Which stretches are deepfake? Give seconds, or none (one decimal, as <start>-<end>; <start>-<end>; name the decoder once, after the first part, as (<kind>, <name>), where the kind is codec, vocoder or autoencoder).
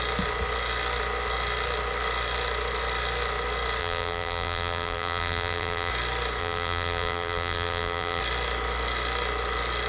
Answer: 3.8-5.9 (vocoder, BigVGAN v2); 6.4-8.2